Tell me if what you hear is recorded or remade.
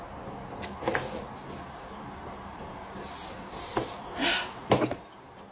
recorded